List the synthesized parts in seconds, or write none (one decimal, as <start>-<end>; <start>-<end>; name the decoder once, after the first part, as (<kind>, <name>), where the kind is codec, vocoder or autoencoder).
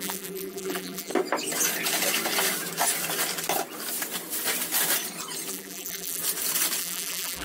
0.0-1.1 (vocoder, BigVGAN v2); 5.5-6.2; 6.8-7.4